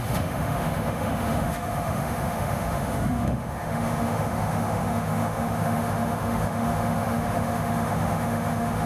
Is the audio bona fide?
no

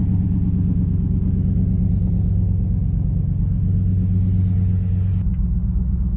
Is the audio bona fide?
yes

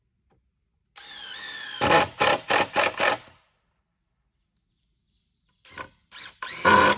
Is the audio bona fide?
yes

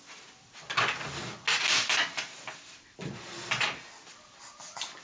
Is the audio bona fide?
yes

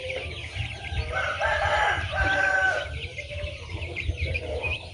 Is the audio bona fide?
no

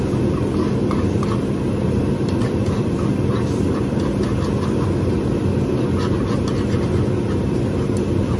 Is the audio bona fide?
yes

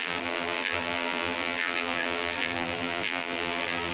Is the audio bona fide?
no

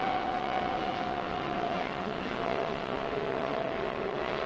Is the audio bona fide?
no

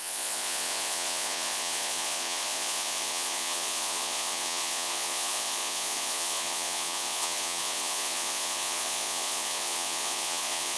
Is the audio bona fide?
no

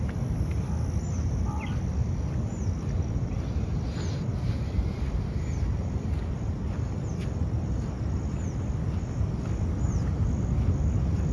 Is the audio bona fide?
yes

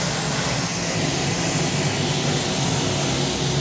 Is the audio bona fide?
yes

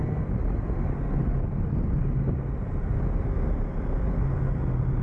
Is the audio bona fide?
yes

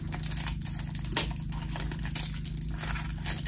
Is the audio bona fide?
yes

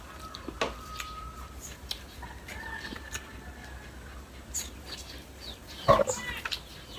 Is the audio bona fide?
yes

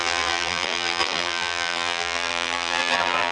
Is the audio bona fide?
no